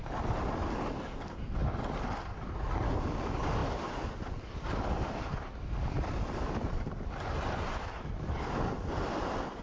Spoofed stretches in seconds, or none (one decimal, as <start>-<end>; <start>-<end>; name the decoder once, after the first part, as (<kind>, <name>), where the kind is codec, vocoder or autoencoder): none